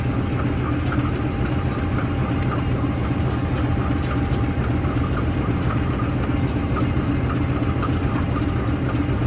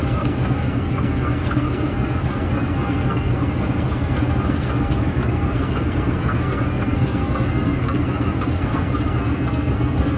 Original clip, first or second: first